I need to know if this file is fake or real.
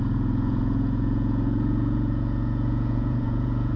fake